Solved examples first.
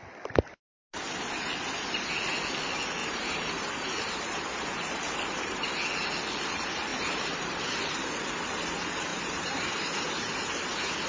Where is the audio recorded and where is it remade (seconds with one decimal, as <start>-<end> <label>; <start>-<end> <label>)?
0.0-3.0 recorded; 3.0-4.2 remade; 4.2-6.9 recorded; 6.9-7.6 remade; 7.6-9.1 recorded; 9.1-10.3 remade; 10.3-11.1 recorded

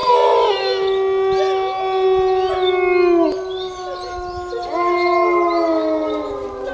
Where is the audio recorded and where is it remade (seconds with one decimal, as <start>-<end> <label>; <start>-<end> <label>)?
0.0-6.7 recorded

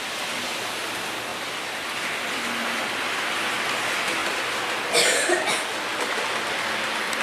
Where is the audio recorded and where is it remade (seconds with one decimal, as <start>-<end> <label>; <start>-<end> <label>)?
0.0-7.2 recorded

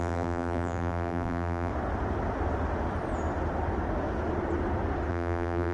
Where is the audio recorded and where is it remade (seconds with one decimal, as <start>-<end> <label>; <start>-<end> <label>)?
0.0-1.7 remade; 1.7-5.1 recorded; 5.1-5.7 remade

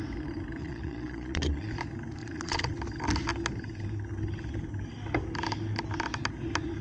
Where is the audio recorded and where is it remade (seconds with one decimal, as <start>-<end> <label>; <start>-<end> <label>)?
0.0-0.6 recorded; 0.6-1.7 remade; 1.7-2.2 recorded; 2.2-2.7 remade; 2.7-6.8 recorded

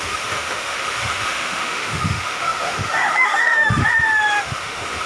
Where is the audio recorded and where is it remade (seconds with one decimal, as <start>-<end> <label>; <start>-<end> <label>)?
0.0-3.8 remade; 3.8-4.4 recorded; 4.4-5.1 remade

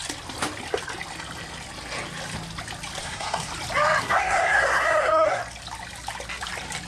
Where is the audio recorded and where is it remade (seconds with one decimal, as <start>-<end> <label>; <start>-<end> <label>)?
0.0-3.0 recorded; 3.0-3.5 remade; 3.5-4.0 recorded; 4.0-5.4 remade; 5.4-6.9 recorded